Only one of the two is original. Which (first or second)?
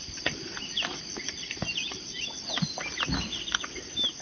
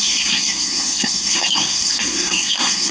first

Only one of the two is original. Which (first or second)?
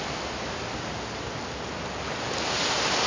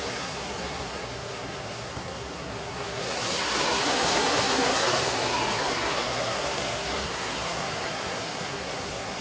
first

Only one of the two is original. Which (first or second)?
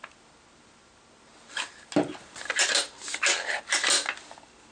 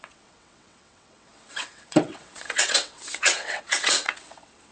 first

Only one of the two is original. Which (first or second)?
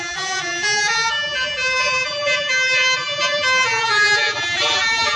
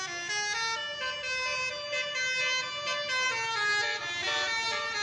second